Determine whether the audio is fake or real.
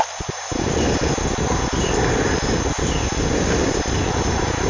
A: real